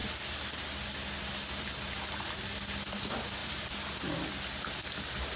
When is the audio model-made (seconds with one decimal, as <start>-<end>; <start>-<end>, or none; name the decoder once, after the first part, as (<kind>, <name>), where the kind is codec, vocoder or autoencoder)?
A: 3.4-4.2 (vocoder, BigVGAN v2)